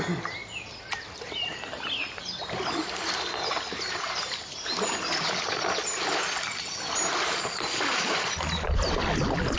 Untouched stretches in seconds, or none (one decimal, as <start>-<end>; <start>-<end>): 0.0-0.4; 1.6-9.6